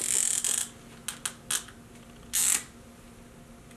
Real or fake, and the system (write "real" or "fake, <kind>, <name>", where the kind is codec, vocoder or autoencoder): real